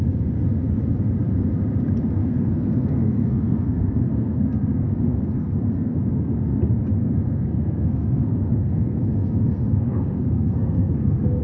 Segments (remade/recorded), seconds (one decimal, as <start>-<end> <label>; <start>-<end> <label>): 0.0-2.2 recorded; 2.2-6.4 remade; 6.4-7.0 recorded; 7.0-11.4 remade